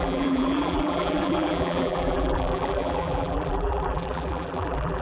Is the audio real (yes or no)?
no